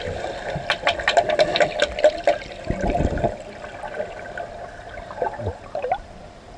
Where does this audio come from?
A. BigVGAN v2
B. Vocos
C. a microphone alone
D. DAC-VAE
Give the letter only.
C